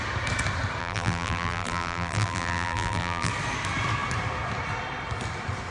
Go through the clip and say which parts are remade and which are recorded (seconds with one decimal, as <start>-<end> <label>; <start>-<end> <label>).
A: 0.0-0.8 recorded; 0.8-3.3 remade; 3.3-5.7 recorded